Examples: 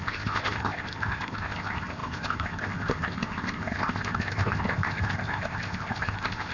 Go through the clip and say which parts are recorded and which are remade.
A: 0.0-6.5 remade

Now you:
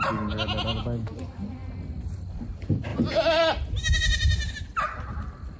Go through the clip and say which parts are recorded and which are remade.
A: 0.0-5.6 recorded

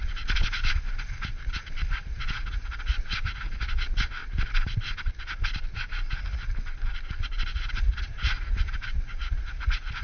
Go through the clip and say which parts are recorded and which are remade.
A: 0.0-1.9 recorded; 1.9-4.2 remade; 4.2-7.7 recorded; 7.7-10.0 remade

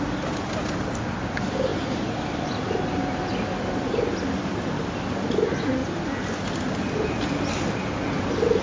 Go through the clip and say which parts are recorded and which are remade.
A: 0.0-8.6 recorded

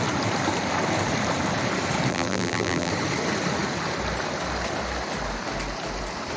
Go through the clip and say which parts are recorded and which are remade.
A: 0.0-2.1 recorded; 2.1-2.9 remade; 2.9-6.4 recorded

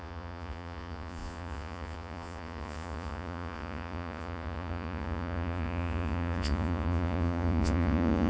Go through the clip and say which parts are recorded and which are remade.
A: 0.0-8.3 remade

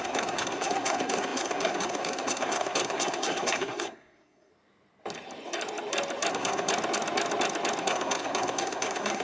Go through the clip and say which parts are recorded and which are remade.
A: 0.0-4.5 remade; 4.5-6.3 recorded; 6.3-6.7 remade; 6.7-7.8 recorded; 7.8-9.2 remade